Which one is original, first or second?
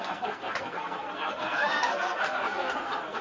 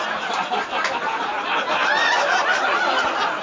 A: second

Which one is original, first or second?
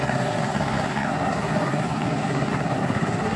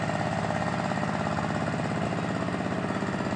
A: second